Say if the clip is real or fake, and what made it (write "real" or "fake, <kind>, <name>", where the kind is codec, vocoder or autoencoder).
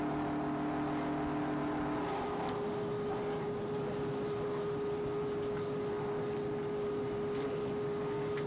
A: real